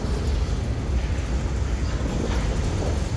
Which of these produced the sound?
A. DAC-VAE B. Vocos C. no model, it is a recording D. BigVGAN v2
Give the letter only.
C